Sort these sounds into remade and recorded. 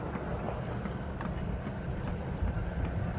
recorded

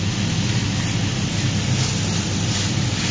recorded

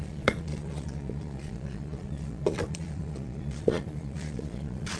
remade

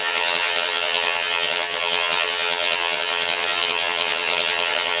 remade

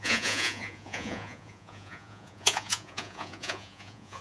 remade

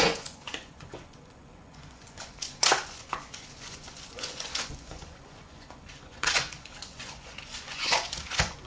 remade